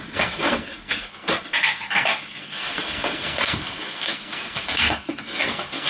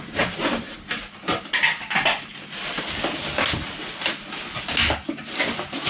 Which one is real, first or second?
second